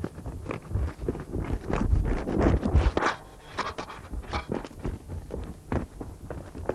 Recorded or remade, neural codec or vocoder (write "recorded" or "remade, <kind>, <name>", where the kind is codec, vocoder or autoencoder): recorded